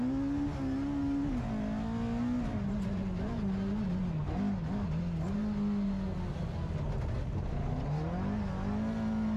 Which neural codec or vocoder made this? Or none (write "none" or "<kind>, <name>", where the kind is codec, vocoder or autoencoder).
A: none